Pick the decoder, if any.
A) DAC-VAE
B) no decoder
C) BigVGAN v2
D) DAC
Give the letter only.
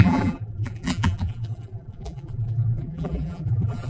C